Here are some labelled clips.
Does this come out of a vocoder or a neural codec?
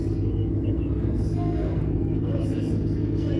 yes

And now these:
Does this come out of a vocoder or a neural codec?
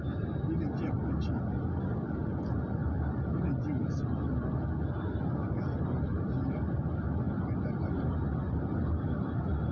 no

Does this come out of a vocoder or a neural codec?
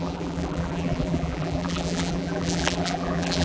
yes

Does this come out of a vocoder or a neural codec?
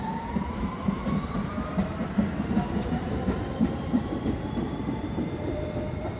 yes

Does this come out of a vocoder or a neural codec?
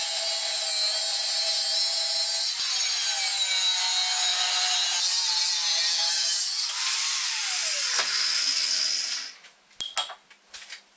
no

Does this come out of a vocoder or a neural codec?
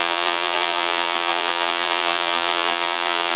yes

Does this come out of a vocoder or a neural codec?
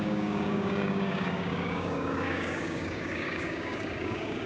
yes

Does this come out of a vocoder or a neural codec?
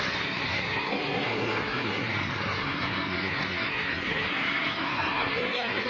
yes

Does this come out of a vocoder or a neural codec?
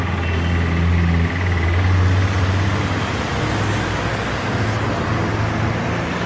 no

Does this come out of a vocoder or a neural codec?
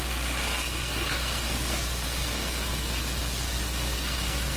yes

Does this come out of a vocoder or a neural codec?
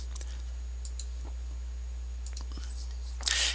no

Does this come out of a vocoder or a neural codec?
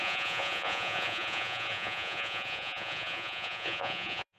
yes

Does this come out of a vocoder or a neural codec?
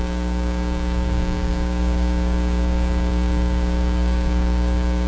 yes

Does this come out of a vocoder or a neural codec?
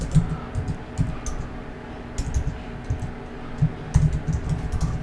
no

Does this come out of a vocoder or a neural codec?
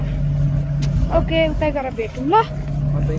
no